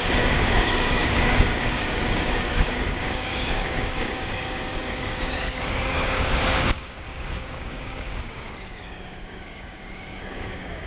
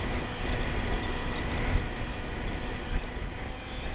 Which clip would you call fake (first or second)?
first